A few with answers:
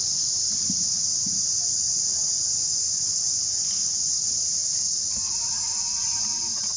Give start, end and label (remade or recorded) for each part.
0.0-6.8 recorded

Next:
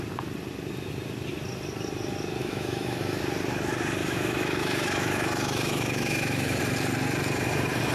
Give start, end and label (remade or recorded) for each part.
0.0-2.4 recorded; 2.4-3.2 remade; 3.2-4.0 recorded; 4.0-6.6 remade; 6.6-7.9 recorded

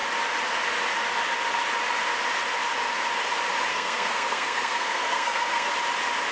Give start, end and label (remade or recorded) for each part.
0.0-3.7 recorded; 3.7-5.7 remade; 5.7-6.3 recorded